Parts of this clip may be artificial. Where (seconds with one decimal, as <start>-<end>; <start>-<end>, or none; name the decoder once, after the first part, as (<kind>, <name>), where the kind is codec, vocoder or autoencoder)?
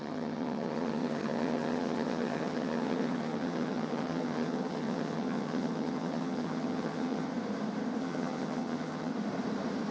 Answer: 0.0-7.3 (vocoder, HiFi-GAN); 8.0-9.1